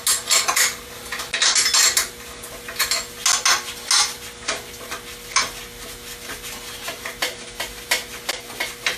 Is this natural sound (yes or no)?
yes